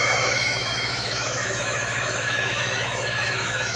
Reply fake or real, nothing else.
fake